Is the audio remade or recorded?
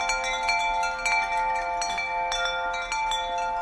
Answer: recorded